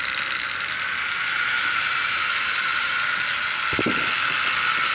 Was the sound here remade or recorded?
recorded